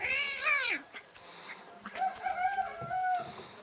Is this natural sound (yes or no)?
yes